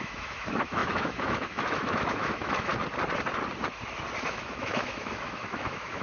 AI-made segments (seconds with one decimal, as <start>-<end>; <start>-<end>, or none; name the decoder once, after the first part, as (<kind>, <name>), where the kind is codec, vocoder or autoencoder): 0.0-2.7 (autoencoder, DAC-VAE); 4.2-6.0

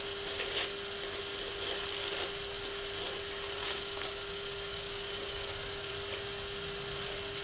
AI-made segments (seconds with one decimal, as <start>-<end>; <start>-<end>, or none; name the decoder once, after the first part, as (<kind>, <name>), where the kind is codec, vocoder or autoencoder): 3.6-5.9 (codec, DAC)

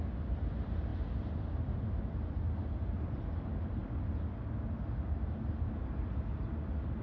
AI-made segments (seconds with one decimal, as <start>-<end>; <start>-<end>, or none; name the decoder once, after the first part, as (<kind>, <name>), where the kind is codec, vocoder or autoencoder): none

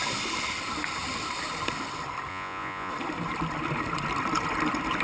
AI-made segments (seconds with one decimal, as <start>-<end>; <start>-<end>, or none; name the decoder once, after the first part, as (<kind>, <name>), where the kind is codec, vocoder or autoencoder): 2.3-2.9 (vocoder, Vocos)

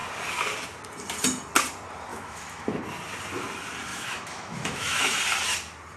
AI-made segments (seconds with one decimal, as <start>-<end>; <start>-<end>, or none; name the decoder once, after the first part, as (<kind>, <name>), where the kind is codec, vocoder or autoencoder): 2.1-2.8 (autoencoder, DAC-VAE); 3.9-5.2

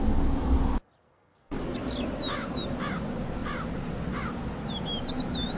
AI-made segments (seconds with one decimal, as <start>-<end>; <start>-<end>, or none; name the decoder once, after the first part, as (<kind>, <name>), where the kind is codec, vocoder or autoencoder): 1.0-1.6 (codec, SNAC)

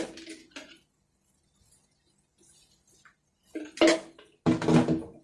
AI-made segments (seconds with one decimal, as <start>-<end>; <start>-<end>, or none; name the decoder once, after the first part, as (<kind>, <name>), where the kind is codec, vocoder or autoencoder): none

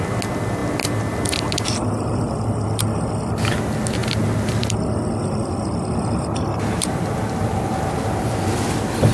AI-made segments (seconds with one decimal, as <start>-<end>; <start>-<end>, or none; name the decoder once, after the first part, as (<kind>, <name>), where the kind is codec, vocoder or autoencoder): none